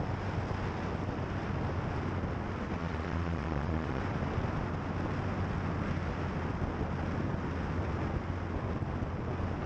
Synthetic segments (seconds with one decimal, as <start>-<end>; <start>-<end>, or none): 2.8-4.0